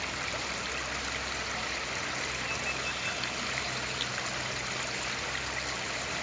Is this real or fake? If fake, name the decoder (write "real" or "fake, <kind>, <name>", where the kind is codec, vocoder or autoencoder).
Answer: real